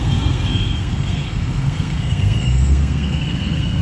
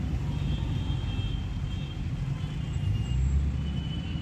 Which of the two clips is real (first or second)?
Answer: second